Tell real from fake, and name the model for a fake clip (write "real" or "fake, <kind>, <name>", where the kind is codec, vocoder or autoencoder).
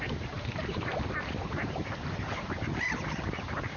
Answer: fake, vocoder, BigVGAN v2